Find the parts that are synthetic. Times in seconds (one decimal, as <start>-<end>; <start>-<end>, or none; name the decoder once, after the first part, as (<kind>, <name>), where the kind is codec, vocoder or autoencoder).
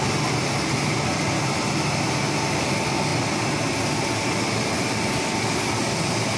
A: none